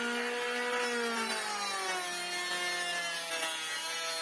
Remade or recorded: recorded